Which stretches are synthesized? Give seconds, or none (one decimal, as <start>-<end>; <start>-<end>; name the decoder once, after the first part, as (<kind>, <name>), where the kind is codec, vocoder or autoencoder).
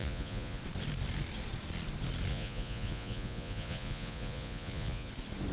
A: 0.0-0.6 (vocoder, Vocos); 2.3-5.1